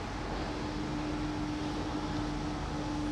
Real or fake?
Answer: real